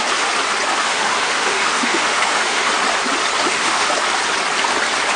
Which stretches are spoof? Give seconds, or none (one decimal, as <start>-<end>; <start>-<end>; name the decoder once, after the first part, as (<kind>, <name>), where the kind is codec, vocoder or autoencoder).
0.8-2.7 (autoencoder, DAC-VAE); 3.4-3.9